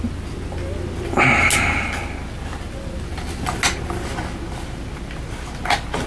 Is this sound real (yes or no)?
yes